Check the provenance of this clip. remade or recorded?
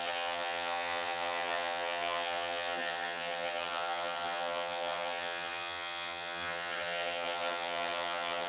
remade